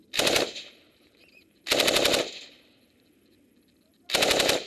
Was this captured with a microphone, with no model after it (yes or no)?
yes